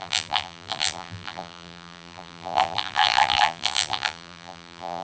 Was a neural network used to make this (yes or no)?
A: yes